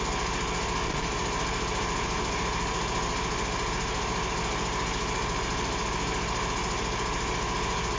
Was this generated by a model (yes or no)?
no